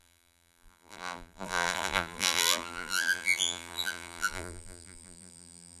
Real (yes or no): no